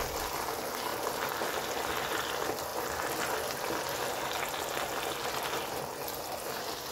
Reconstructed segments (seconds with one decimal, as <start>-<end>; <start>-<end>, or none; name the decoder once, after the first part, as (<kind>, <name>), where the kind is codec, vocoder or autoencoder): none